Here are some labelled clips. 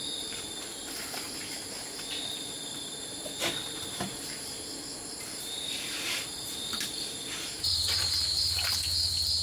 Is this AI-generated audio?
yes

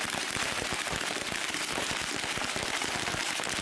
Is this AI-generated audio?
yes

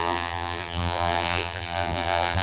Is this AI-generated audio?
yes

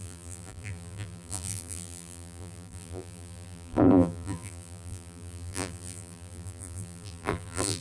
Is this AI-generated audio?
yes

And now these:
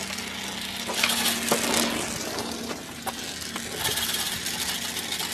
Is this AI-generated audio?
no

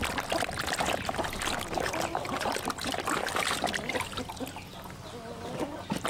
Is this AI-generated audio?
no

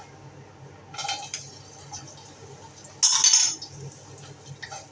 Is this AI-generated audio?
no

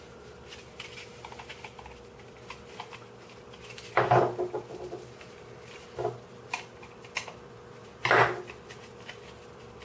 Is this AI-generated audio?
no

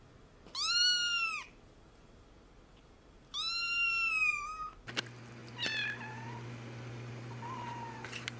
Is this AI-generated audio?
no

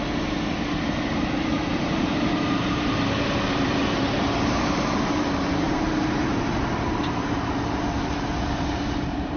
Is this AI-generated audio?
yes